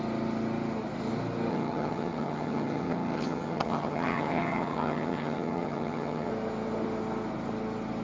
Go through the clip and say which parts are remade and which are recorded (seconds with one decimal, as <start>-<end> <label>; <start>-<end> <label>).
0.0-1.5 recorded; 1.5-6.3 remade; 6.3-8.0 recorded